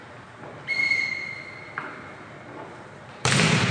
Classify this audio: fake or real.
real